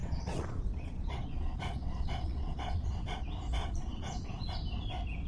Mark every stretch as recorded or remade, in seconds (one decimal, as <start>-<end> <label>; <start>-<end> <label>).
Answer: 0.0-3.2 remade; 3.2-3.6 recorded; 3.6-4.5 remade; 4.5-5.3 recorded